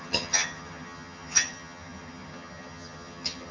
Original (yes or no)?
no